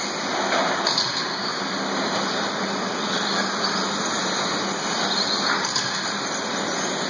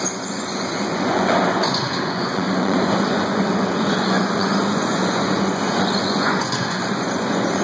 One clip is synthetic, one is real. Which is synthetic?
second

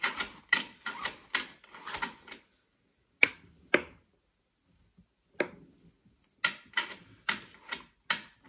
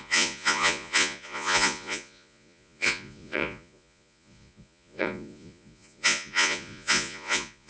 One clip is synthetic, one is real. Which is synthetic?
second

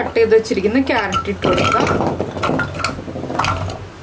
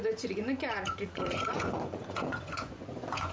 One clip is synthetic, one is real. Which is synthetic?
second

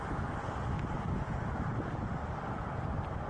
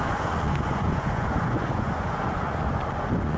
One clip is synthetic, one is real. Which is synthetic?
second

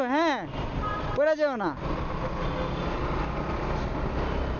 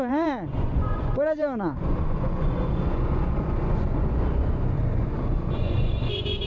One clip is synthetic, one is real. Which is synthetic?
second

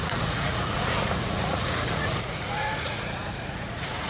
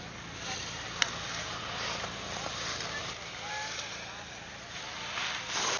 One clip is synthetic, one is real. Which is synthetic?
first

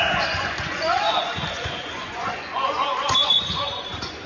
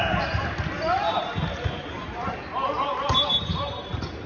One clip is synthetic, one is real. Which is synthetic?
first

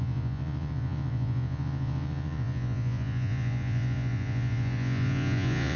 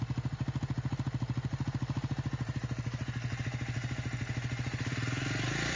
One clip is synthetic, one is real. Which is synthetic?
first